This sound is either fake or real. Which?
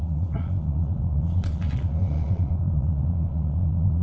fake